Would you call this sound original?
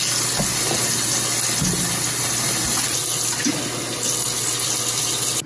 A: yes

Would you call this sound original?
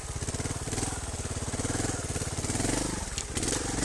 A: no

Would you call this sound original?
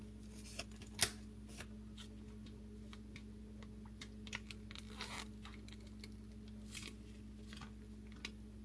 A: yes